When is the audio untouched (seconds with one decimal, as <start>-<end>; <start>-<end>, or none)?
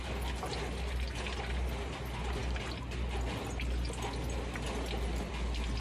0.0-5.8